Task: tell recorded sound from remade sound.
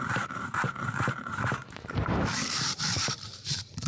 remade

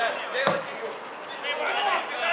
recorded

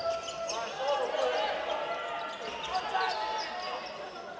recorded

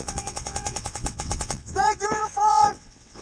remade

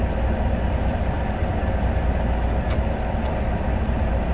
recorded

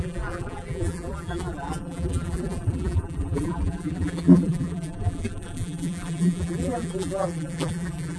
remade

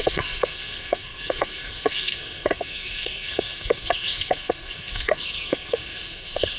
remade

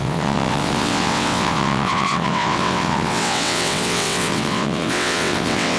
remade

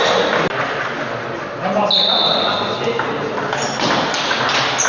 recorded